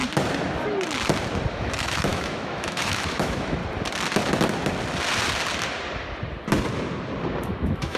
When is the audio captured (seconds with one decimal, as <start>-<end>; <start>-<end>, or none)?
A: 0.0-1.5; 3.6-7.5